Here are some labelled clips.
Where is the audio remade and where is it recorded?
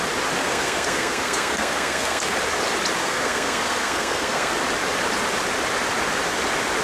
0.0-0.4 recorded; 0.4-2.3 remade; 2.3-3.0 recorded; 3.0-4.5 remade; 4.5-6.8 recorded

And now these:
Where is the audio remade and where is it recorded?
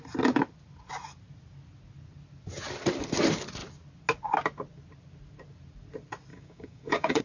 0.0-6.3 recorded; 6.3-7.2 remade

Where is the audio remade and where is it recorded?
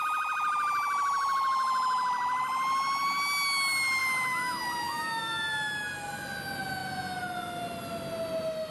0.0-8.7 recorded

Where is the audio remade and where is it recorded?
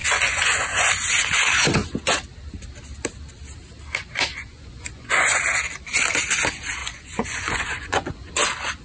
0.0-0.9 remade; 0.9-4.3 recorded; 4.3-5.4 remade; 5.4-6.8 recorded; 6.8-8.3 remade; 8.3-8.8 recorded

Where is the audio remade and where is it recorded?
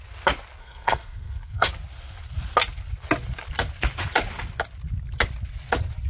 0.0-0.6 recorded; 0.6-1.7 remade; 1.7-6.1 recorded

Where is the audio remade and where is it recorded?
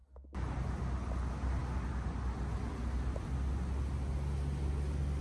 0.0-5.2 recorded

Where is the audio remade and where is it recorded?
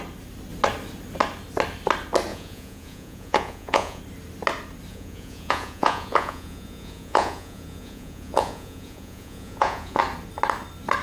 0.0-2.3 recorded; 2.3-4.0 remade; 4.0-4.9 recorded; 4.9-10.0 remade; 10.0-11.0 recorded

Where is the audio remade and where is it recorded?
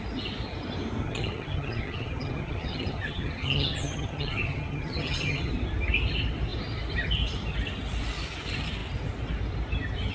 0.0-1.0 recorded; 1.0-5.5 remade; 5.5-10.1 recorded